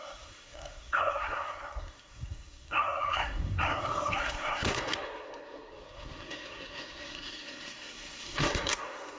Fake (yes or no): yes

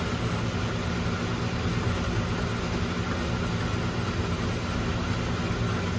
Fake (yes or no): no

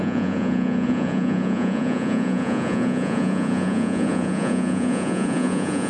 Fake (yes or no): yes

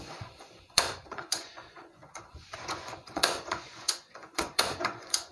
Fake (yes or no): yes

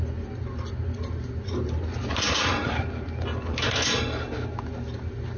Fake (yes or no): no